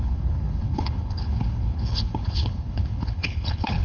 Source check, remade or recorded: remade